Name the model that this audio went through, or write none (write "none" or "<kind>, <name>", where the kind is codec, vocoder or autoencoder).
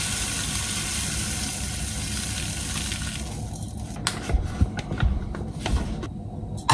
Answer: none